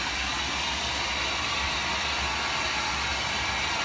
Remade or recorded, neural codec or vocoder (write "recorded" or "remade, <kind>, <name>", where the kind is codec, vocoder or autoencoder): recorded